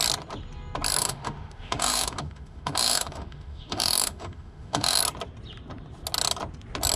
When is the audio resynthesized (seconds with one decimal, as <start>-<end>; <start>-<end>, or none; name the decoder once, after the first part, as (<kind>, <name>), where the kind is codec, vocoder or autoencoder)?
1.0-5.0 (autoencoder, DAC-VAE)